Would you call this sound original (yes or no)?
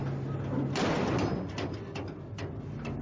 yes